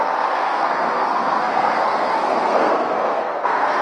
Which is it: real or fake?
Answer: fake